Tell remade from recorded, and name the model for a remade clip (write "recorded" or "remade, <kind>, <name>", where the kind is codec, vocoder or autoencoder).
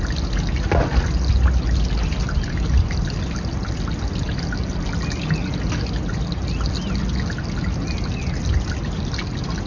recorded